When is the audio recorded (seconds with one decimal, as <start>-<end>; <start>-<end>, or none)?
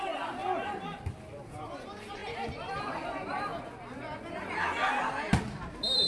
0.4-1.4; 3.5-5.0